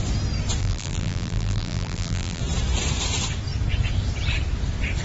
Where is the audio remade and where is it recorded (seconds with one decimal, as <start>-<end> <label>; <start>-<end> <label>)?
0.0-0.6 recorded; 0.6-2.4 remade; 2.4-5.0 recorded